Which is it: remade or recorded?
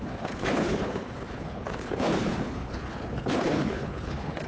remade